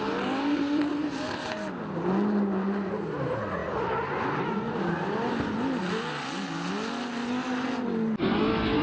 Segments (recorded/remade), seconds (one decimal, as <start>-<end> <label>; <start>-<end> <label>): 0.0-8.8 recorded